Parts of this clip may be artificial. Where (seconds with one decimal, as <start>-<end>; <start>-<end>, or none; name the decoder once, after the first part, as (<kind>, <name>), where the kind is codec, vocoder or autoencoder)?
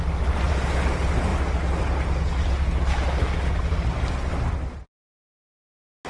none